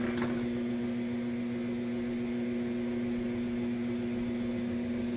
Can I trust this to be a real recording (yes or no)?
yes